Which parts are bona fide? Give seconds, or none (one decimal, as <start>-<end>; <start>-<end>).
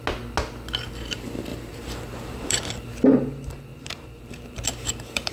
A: 0.0-1.5; 2.7-3.7